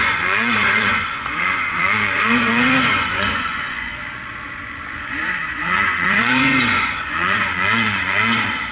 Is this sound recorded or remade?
remade